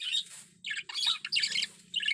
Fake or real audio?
real